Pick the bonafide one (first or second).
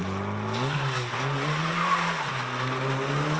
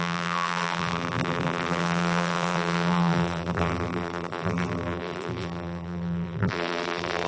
first